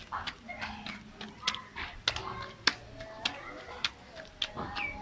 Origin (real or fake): real